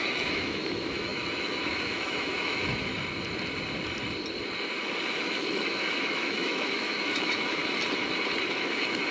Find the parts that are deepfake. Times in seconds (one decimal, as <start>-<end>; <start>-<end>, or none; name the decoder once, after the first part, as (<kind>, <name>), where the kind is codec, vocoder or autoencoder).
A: 0.0-2.9 (autoencoder, DAC-VAE); 5.1-7.6; 8.5-9.1